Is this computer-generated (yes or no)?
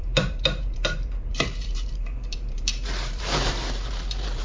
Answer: yes